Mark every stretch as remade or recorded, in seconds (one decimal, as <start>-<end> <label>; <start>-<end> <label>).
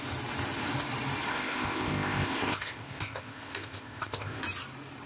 0.0-1.3 recorded; 1.3-4.4 remade; 4.4-5.1 recorded